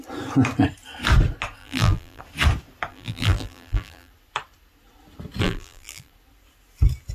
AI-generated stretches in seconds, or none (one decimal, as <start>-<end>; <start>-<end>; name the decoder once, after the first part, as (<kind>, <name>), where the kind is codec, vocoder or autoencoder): 1.6-2.2 (vocoder, BigVGAN v2); 2.9-4.1; 5.4-6.1